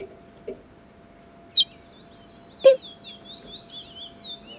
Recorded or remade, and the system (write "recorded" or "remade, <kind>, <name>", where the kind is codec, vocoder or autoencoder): recorded